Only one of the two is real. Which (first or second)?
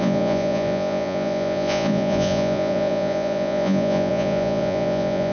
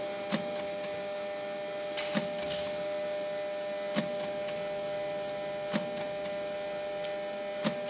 second